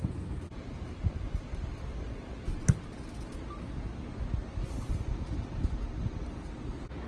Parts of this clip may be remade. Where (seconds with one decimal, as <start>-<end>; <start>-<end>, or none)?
0.0-1.7